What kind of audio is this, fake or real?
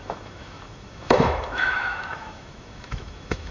fake